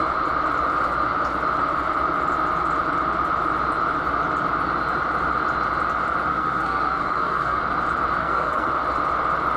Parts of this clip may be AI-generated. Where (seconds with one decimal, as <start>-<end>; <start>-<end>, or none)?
6.3-7.6; 8.2-8.7